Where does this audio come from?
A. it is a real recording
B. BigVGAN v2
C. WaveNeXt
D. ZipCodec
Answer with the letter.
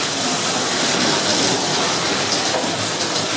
A